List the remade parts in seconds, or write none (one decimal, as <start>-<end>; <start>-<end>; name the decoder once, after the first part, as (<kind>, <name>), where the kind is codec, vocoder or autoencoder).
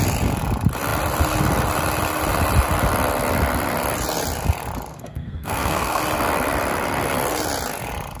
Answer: 4.9-6.0 (codec, SNAC)